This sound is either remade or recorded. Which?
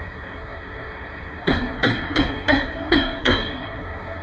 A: remade